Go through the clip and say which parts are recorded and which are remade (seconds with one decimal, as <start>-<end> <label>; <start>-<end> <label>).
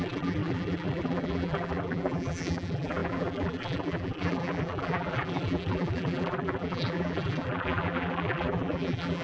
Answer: 0.0-9.2 remade